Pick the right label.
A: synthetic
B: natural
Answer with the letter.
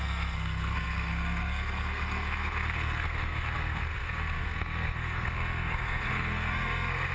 A